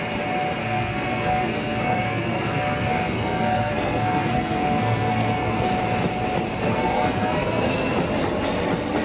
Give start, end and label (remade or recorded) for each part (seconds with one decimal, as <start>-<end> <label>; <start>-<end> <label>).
0.0-0.6 recorded; 0.6-5.7 remade; 5.7-6.7 recorded; 6.7-7.7 remade; 7.7-9.0 recorded